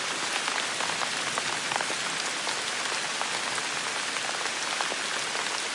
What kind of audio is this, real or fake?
real